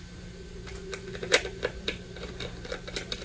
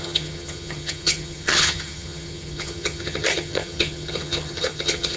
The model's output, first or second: second